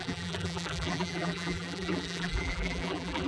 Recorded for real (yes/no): no